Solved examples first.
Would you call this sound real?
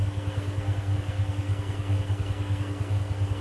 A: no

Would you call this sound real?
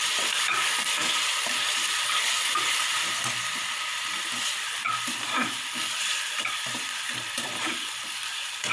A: no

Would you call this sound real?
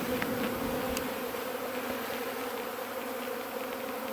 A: yes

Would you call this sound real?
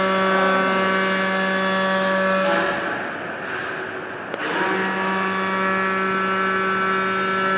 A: yes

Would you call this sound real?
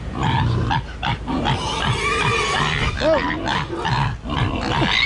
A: yes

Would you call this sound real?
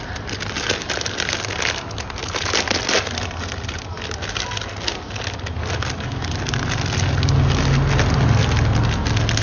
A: yes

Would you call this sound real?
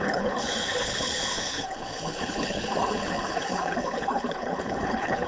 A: no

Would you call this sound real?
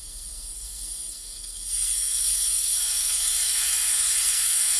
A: no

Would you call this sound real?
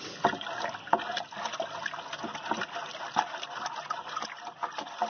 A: yes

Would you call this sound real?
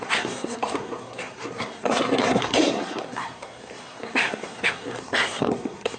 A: no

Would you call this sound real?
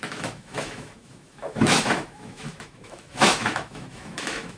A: no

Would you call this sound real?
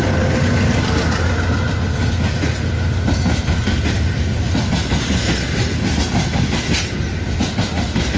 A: yes